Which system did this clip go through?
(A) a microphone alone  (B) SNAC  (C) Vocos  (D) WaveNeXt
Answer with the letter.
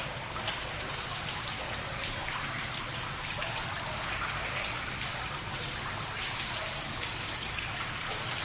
A